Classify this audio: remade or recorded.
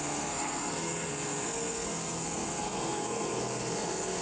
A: remade